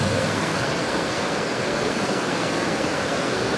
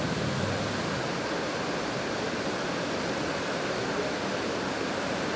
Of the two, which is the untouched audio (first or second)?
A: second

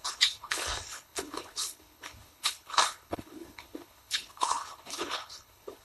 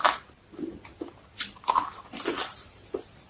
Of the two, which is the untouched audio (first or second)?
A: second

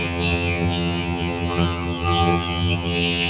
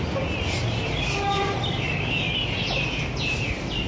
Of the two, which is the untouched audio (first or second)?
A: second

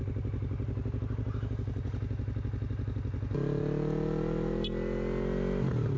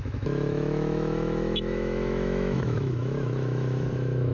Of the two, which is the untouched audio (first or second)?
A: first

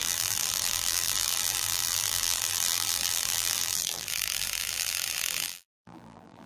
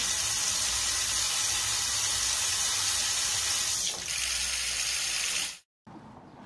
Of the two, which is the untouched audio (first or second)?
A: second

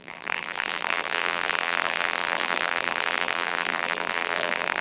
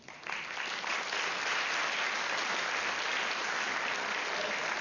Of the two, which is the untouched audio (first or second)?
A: second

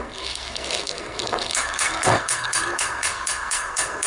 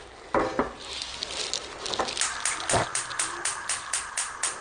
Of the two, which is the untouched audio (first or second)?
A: second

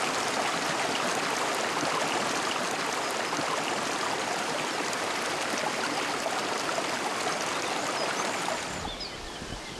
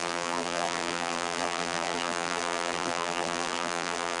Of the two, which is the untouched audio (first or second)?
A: first